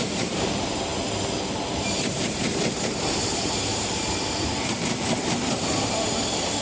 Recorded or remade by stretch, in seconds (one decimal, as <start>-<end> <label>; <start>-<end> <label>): 0.0-6.6 remade